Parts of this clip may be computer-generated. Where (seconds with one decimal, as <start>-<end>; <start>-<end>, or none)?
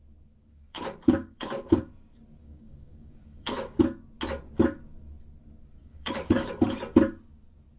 0.4-1.8; 2.4-3.8; 5.8-6.5